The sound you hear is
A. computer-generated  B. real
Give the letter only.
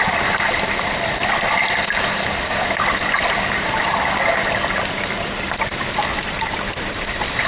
B